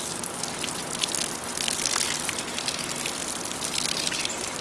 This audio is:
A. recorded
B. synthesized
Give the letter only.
A